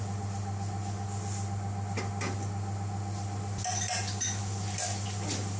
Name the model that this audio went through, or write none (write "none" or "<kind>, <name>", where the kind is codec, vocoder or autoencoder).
none